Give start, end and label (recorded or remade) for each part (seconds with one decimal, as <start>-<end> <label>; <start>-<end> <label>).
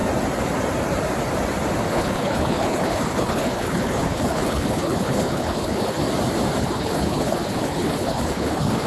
0.0-1.9 recorded; 1.9-6.0 remade; 6.0-6.6 recorded; 6.6-8.9 remade